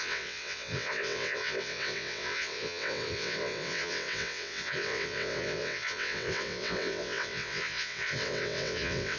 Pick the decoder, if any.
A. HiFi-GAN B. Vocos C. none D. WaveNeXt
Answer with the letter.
D